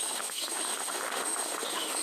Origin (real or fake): fake